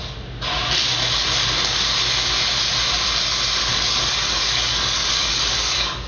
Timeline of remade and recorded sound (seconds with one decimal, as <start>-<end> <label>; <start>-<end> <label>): 0.0-3.7 recorded; 3.7-6.1 remade